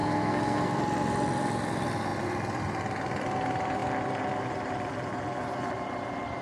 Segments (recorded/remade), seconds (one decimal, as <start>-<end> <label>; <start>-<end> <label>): 0.0-0.8 remade; 0.8-6.4 recorded